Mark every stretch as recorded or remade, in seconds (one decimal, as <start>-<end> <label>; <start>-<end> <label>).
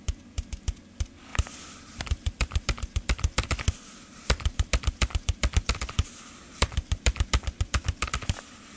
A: 0.0-8.8 recorded